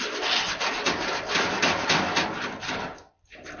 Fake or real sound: fake